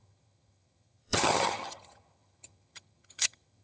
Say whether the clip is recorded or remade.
remade